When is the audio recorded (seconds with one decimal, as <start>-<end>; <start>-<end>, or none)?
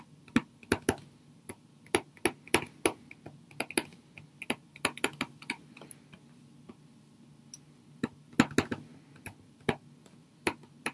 0.0-10.9